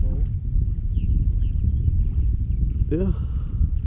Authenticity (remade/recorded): recorded